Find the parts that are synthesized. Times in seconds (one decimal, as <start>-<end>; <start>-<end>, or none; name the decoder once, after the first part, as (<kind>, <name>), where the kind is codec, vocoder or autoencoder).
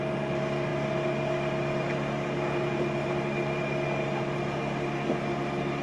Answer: none